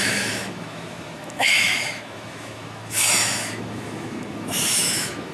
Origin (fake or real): fake